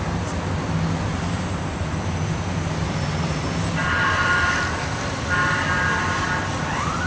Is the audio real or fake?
real